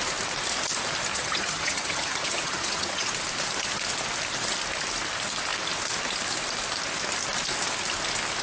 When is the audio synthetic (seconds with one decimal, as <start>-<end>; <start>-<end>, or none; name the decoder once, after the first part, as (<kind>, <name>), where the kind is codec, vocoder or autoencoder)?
1.1-3.1 (vocoder, HiFi-GAN)